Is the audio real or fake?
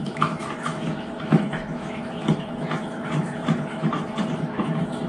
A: fake